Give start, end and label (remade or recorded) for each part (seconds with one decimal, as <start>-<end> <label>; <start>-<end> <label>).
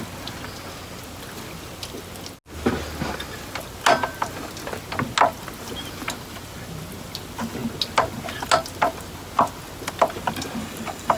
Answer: 0.0-10.6 recorded; 10.6-11.2 remade